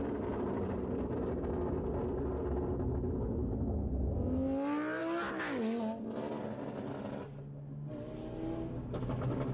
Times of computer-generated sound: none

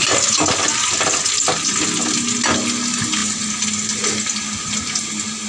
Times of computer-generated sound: none

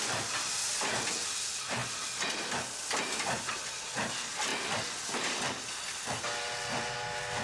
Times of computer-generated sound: none

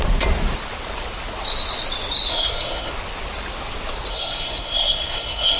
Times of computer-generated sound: 2.3-2.9; 4.1-5.6

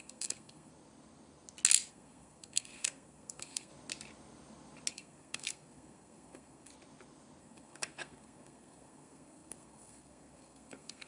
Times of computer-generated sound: 0.0-0.7; 1.9-3.7; 4.9-6.7; 7.4-11.1

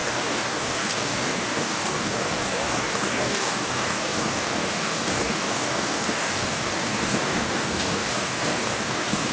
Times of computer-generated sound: 0.0-9.3

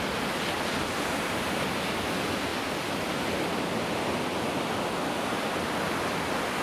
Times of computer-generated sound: none